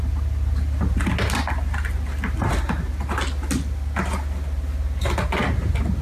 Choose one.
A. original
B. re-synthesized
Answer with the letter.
A